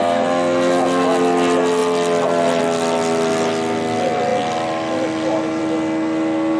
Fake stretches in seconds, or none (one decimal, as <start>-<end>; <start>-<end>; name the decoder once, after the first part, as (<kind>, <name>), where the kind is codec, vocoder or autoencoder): none